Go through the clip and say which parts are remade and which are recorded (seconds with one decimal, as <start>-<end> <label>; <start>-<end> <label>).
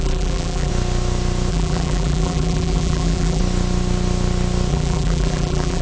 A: 0.0-0.7 remade; 0.7-1.5 recorded; 1.5-3.4 remade; 3.4-4.7 recorded; 4.7-5.8 remade